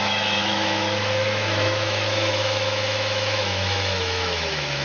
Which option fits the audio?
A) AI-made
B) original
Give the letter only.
A